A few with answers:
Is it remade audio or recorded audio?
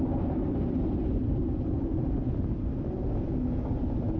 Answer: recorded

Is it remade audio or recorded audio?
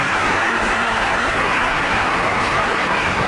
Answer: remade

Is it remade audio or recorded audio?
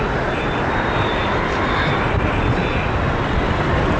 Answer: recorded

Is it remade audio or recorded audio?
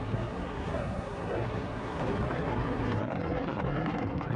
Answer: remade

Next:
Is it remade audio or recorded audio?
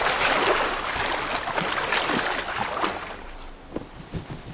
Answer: recorded